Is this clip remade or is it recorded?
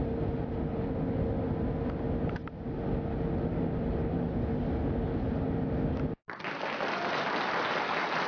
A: recorded